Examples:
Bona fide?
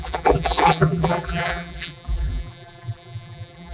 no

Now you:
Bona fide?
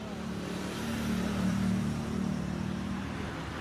no